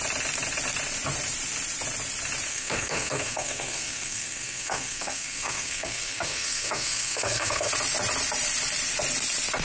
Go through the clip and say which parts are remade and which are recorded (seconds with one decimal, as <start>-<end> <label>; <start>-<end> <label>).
0.0-2.5 recorded; 2.5-7.7 remade; 7.7-9.6 recorded